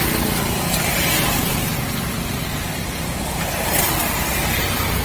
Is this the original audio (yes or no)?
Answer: yes